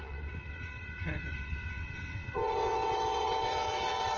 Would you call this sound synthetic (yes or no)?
yes